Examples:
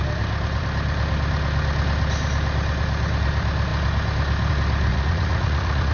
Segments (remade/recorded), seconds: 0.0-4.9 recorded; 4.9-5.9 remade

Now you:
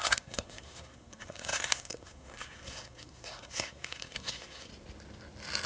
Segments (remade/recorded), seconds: 0.0-4.7 remade; 4.7-5.7 recorded